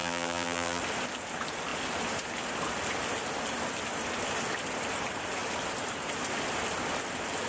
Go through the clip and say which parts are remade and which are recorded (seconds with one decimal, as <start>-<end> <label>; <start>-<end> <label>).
0.0-0.8 remade; 0.8-7.5 recorded